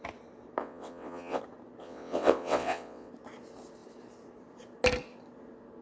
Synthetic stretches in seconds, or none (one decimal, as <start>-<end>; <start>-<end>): 0.6-1.4; 1.8-3.1